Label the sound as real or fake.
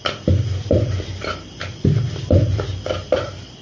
fake